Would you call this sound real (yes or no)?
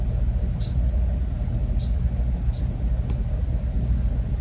yes